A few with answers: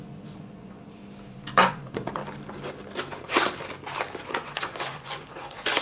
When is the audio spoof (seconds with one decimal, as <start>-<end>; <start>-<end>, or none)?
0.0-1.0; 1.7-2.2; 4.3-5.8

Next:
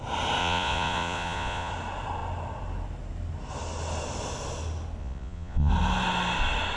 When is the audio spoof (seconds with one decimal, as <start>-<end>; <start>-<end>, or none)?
0.4-1.7; 5.0-5.7

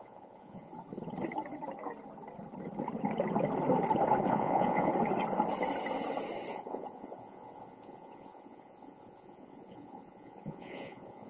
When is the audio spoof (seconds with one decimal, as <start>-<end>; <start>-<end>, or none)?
0.0-0.7; 4.3-4.9; 6.5-11.3